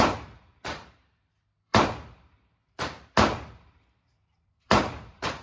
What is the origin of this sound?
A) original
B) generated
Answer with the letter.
B